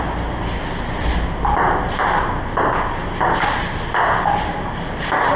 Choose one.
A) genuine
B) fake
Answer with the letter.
A